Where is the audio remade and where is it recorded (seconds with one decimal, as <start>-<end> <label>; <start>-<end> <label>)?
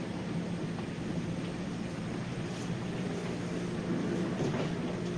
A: 0.0-3.1 remade; 3.1-4.0 recorded; 4.0-4.6 remade; 4.6-5.2 recorded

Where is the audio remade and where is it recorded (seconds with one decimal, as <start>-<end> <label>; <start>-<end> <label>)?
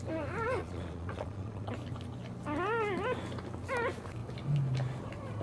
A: 0.0-0.6 recorded; 0.6-1.7 remade; 1.7-5.4 recorded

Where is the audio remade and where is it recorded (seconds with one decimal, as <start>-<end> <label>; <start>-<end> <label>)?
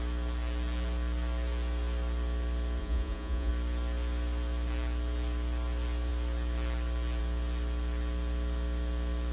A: 0.0-2.8 recorded; 2.8-3.5 remade; 3.5-9.3 recorded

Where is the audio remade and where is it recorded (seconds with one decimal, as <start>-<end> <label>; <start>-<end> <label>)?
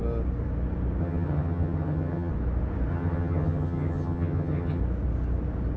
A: 0.0-1.0 recorded; 1.0-2.3 remade; 2.3-2.9 recorded; 2.9-4.8 remade; 4.8-5.8 recorded